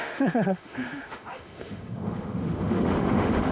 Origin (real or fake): fake